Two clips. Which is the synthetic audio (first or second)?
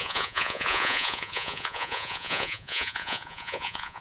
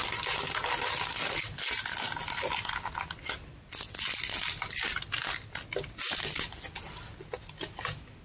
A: first